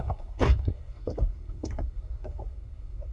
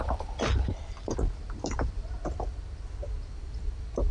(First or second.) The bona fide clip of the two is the second